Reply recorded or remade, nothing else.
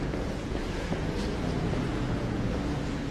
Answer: remade